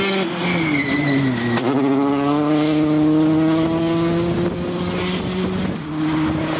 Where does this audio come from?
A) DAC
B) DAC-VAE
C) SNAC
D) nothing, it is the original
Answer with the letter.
D